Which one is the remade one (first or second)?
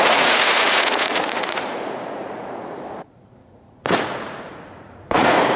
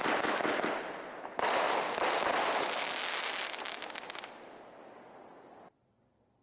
first